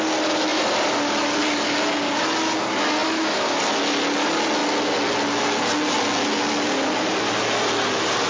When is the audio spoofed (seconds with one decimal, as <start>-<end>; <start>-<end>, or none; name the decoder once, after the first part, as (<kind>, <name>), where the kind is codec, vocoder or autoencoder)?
none